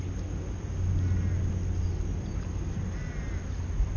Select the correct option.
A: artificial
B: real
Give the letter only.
B